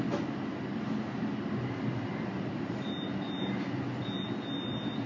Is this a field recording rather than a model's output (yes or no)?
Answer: yes